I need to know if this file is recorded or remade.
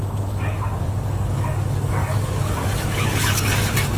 remade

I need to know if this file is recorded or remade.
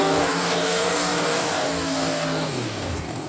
remade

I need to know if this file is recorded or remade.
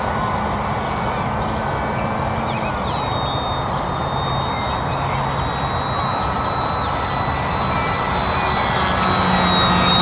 recorded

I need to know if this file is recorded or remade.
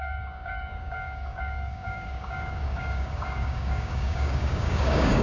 remade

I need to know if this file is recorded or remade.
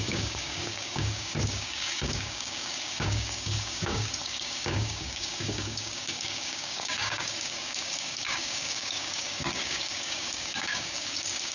remade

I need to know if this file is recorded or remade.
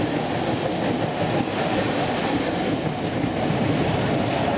recorded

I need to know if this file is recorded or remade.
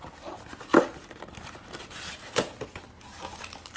recorded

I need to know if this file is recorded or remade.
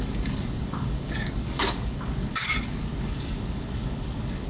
remade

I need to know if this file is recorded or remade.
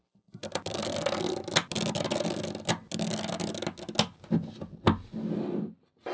recorded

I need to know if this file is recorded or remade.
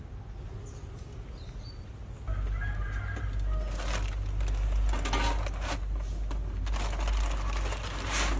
recorded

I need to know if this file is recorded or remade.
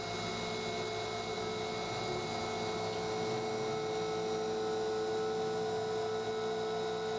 recorded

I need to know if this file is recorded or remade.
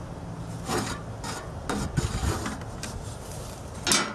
recorded